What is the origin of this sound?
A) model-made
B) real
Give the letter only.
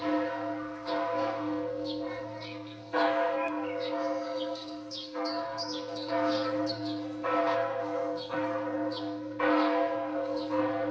A